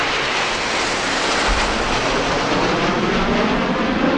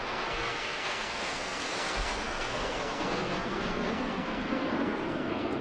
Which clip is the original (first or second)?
first